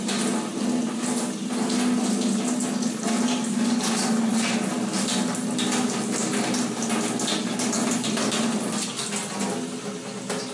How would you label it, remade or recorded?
recorded